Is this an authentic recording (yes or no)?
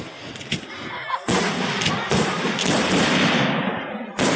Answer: yes